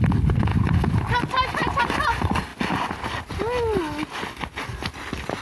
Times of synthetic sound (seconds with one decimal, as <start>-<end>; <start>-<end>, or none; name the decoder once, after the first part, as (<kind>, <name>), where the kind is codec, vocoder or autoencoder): none